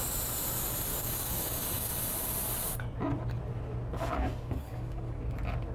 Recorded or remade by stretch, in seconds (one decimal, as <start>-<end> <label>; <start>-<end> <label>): 0.0-0.9 recorded; 0.9-1.9 remade; 1.9-4.6 recorded; 4.6-5.2 remade; 5.2-5.7 recorded